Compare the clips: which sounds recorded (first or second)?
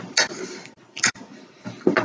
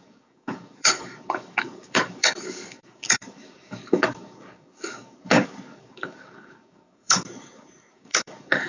first